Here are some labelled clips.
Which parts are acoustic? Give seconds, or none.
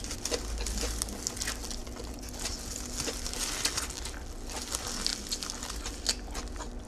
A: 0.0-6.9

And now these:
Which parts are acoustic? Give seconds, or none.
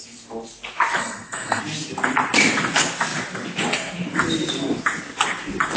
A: 0.0-1.0; 1.6-5.8